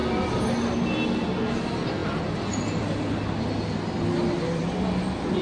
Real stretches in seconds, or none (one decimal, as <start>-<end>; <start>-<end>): 0.0-5.4